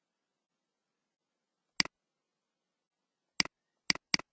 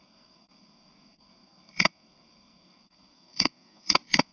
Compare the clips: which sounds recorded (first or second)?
first